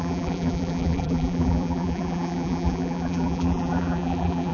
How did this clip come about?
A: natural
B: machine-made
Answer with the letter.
B